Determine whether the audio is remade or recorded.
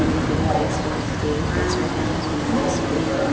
recorded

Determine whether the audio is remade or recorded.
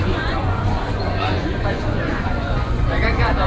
remade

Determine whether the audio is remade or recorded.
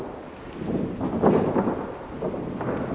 recorded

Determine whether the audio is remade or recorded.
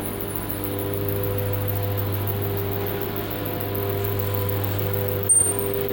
recorded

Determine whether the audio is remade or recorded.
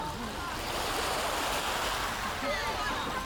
recorded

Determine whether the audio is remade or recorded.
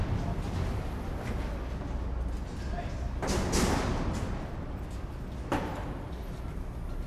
recorded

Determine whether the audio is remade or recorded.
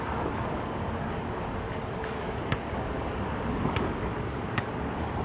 remade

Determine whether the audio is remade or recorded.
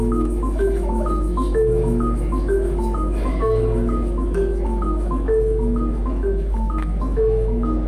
remade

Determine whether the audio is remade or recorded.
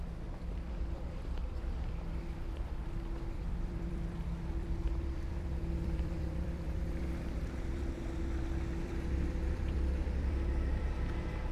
remade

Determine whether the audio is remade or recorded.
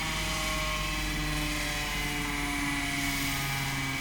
recorded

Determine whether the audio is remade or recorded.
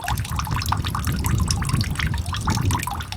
recorded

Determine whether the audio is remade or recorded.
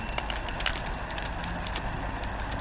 recorded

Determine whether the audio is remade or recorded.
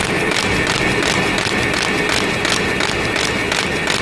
recorded